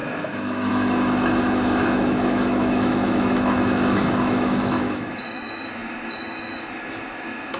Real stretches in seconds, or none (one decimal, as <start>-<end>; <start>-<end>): none